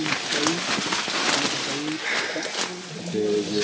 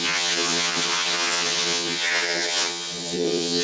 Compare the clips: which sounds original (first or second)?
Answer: first